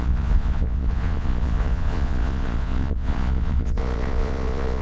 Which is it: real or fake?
fake